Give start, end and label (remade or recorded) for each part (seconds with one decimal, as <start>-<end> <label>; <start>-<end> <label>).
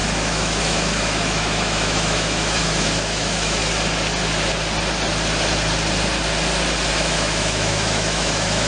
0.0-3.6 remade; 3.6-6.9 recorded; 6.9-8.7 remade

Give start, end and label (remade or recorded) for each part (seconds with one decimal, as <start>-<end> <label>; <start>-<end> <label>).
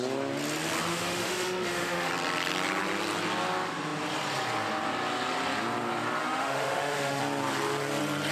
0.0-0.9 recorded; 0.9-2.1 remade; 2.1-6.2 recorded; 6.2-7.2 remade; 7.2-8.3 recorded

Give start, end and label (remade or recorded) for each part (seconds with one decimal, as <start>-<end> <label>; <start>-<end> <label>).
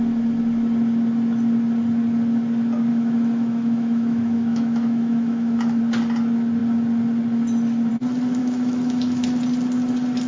0.0-2.9 recorded; 2.9-5.8 remade; 5.8-8.4 recorded; 8.4-9.4 remade; 9.4-10.3 recorded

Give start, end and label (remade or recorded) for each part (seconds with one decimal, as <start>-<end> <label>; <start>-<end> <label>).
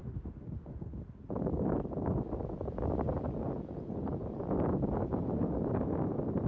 0.0-1.2 remade; 1.2-6.5 recorded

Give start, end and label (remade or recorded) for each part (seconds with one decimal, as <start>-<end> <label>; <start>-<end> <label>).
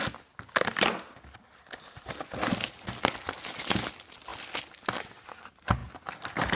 0.0-6.5 recorded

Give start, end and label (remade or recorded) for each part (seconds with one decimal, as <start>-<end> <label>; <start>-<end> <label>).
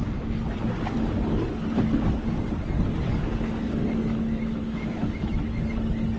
0.0-4.0 recorded; 4.0-5.6 remade; 5.6-6.2 recorded